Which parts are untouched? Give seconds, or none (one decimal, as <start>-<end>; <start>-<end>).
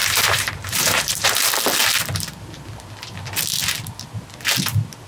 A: 1.5-5.1